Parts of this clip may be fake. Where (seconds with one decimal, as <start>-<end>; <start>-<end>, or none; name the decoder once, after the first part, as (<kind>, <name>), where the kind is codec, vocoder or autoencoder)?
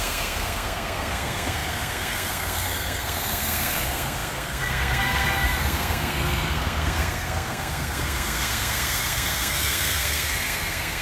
0.0-11.0 (codec, SNAC)